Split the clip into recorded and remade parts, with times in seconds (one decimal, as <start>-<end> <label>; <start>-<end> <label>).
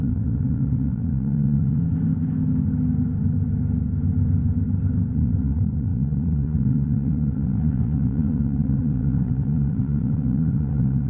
0.0-1.8 remade; 1.8-5.1 recorded; 5.1-11.1 remade